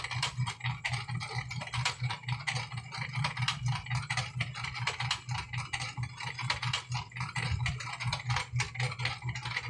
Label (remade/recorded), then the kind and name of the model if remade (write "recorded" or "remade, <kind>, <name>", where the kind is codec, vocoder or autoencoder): recorded